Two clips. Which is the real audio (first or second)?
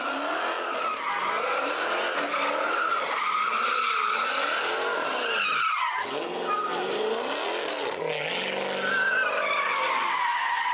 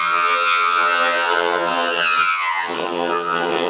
first